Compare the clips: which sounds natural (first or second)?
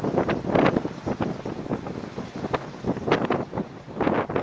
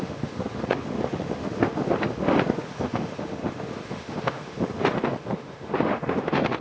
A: first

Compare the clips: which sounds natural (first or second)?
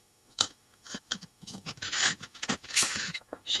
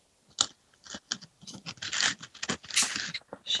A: second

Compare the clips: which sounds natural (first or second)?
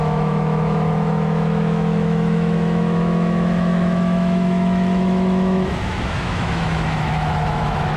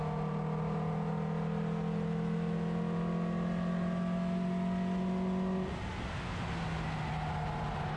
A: second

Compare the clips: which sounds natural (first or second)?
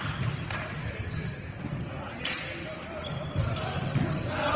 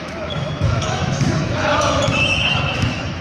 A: first